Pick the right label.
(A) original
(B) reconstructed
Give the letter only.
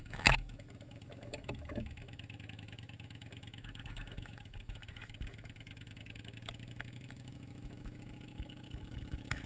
B